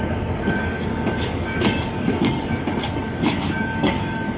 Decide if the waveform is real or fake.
fake